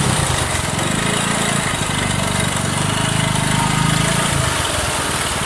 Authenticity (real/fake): real